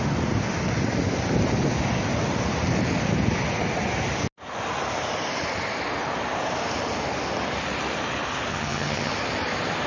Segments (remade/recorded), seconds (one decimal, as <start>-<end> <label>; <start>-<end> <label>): 0.0-8.5 recorded; 8.5-9.1 remade; 9.1-9.9 recorded